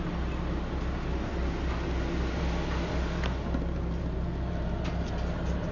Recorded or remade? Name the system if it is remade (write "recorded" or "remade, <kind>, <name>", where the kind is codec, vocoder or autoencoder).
recorded